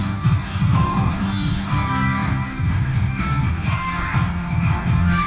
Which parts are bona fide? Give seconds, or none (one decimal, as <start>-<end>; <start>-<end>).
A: none